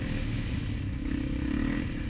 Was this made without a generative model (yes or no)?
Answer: yes